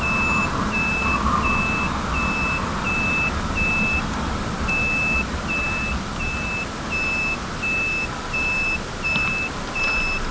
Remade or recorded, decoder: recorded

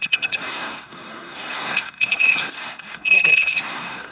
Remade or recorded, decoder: remade, codec, SNAC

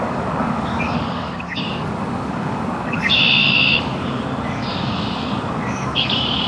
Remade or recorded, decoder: remade, codec, DAC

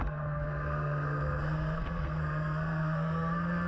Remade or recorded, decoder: remade, codec, SNAC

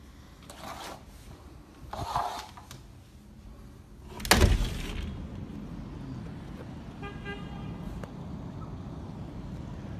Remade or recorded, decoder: recorded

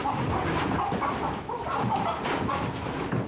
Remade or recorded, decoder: recorded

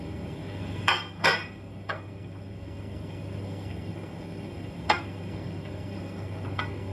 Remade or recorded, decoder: remade, codec, SNAC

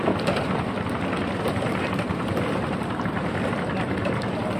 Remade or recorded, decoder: recorded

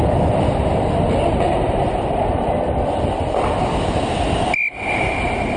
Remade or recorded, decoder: recorded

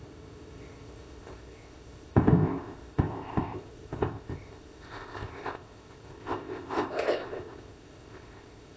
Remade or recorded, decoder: remade, codec, ZipCodec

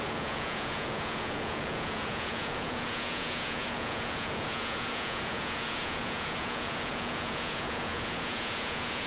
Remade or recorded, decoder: remade, vocoder, Vocos